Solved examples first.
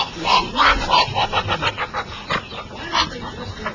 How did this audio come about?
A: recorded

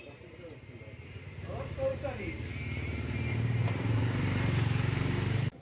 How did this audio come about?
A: remade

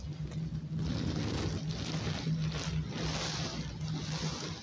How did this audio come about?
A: recorded